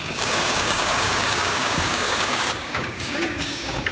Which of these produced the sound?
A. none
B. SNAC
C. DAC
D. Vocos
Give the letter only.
C